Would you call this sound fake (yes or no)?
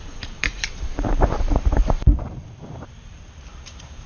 yes